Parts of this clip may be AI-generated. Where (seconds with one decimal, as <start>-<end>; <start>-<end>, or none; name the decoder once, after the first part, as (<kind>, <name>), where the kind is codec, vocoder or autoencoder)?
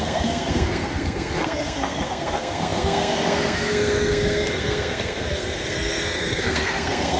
0.0-7.2 (codec, SNAC)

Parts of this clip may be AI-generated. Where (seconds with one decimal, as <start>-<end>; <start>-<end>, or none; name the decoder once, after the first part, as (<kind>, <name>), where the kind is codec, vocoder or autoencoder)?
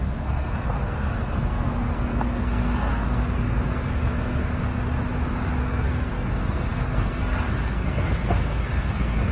0.0-4.7 (codec, SNAC); 5.6-9.3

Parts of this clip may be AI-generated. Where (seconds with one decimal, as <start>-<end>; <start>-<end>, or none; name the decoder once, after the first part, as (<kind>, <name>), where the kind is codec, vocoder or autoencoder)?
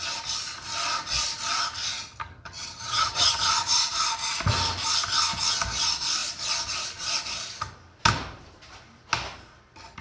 2.2-3.4 (vocoder, HiFi-GAN)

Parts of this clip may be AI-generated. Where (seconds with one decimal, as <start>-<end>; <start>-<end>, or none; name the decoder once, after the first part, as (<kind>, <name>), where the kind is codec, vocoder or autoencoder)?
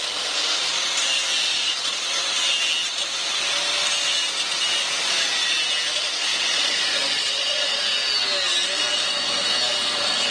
1.5-2.1 (vocoder, Vocos); 6.3-7.8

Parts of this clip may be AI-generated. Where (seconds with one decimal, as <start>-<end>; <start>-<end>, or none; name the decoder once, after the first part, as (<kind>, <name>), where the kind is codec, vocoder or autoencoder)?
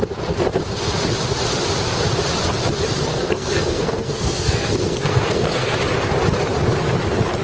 3.1-5.8 (codec, SNAC)